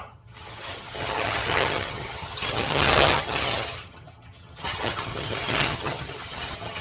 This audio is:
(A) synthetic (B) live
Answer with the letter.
A